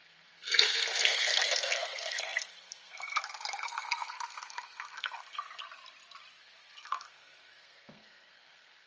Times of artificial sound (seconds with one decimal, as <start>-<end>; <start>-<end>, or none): 0.0-5.6; 6.4-8.9